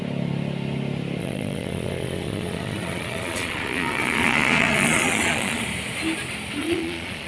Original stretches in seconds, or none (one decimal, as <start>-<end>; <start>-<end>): 0.0-1.2; 5.6-6.6